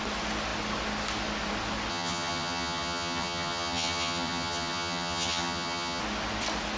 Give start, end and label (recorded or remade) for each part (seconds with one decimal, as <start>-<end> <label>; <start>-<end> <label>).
0.0-1.9 recorded; 1.9-6.0 remade; 6.0-6.8 recorded